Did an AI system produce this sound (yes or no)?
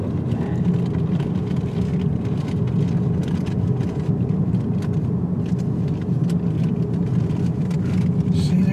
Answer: no